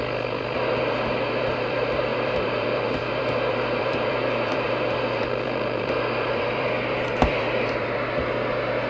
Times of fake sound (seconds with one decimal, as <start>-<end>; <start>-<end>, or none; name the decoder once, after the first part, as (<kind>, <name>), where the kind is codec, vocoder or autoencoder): 0.0-8.9 (vocoder, BigVGAN v2)